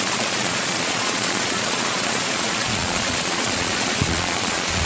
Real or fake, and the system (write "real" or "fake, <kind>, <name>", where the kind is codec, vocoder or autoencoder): fake, vocoder, Vocos